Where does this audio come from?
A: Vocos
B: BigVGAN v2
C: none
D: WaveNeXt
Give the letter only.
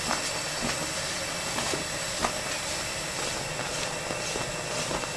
C